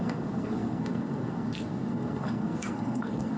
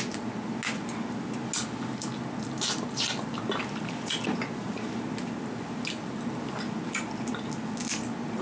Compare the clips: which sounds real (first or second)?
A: second